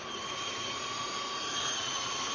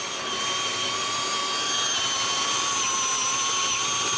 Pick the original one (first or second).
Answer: second